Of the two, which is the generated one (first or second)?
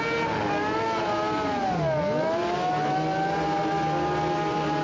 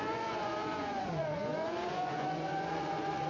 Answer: second